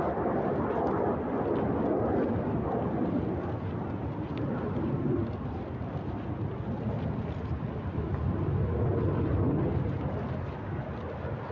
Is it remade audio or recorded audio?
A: recorded